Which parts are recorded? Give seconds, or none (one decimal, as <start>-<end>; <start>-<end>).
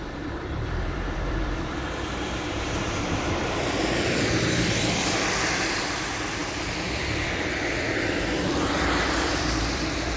none